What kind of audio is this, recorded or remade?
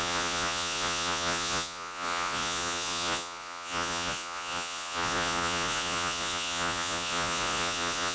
remade